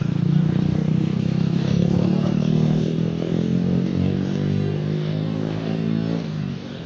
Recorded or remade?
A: remade